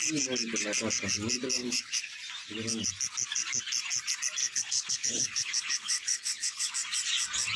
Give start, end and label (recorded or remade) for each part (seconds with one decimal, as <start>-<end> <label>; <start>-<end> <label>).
0.0-1.6 recorded; 1.6-2.1 remade; 2.1-4.4 recorded; 4.4-6.7 remade; 6.7-7.6 recorded